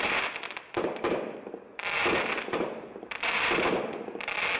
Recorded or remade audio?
recorded